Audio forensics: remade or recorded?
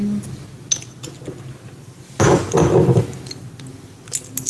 recorded